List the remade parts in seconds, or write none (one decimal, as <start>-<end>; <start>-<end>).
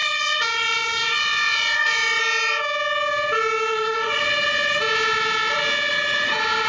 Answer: 0.0-2.2; 3.7-4.2